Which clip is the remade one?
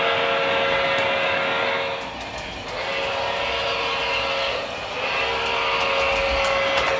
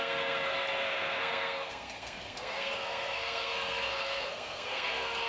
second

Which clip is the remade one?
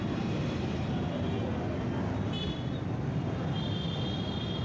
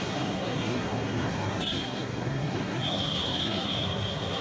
second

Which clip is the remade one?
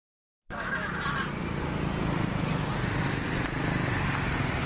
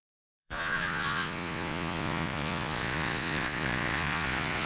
second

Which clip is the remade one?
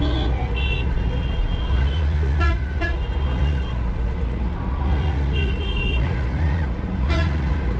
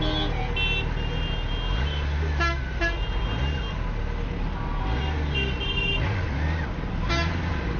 first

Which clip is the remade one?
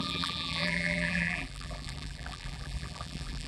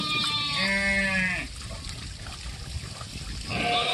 first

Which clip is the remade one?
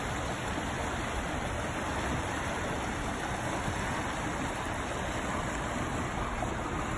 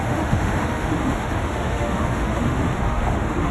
second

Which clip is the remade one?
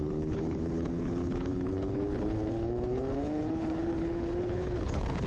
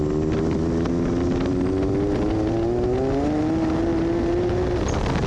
first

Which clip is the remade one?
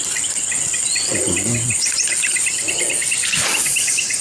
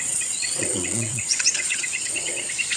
second